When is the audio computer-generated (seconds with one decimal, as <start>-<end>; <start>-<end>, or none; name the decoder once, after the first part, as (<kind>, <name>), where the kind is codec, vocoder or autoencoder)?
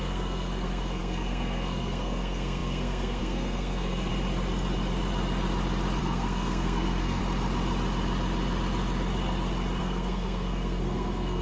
0.0-4.1 (codec, SNAC); 6.0-7.2; 9.8-11.4